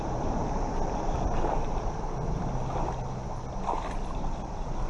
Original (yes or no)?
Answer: yes